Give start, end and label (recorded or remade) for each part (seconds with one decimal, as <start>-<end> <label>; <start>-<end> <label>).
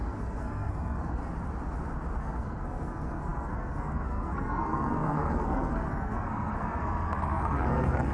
0.0-1.2 remade; 1.2-2.2 recorded; 2.2-8.1 remade